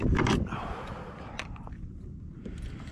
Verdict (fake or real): real